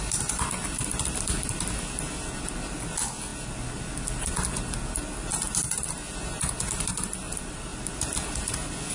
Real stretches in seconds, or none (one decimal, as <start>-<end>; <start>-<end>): 0.0-8.9